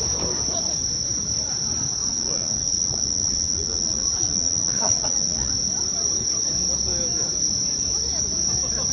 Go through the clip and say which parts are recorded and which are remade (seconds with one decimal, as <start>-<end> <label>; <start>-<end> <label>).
0.0-2.0 recorded; 2.0-5.5 remade; 5.5-8.9 recorded